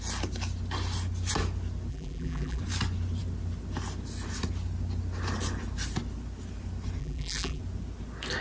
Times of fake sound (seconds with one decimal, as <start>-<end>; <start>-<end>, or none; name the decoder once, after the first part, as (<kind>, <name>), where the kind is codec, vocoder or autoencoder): 1.9-2.6 (vocoder, BigVGAN v2); 7.0-7.6